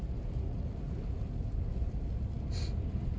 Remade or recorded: recorded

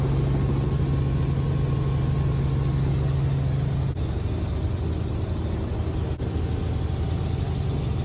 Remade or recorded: recorded